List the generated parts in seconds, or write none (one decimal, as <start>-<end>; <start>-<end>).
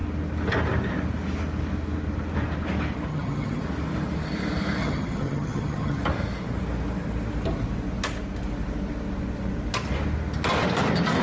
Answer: 3.1-3.6; 4.8-6.0